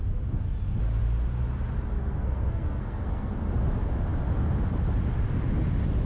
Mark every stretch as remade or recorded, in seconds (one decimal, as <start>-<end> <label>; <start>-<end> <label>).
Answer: 0.0-2.0 recorded; 2.0-3.3 remade; 3.3-6.1 recorded